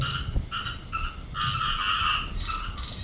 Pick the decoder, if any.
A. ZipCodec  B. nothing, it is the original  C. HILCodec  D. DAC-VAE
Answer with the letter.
B